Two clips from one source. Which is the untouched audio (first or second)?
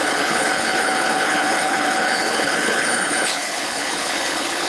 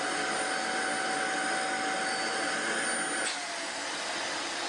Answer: second